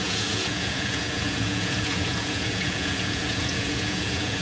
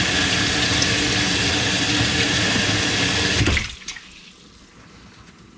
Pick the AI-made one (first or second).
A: first